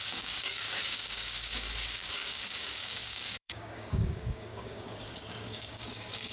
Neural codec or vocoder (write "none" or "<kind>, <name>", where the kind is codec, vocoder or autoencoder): codec, DAC